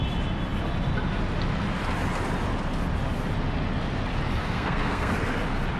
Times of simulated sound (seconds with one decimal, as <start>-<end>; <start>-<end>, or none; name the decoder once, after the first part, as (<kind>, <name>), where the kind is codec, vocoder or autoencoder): 4.4-5.1 (codec, SNAC)